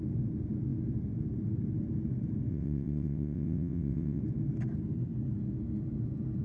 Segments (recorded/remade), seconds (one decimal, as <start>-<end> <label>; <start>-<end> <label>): 0.0-2.5 recorded; 2.5-4.2 remade; 4.2-6.4 recorded